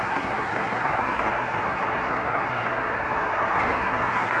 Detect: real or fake fake